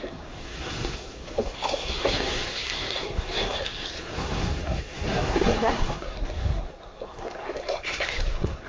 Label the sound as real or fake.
fake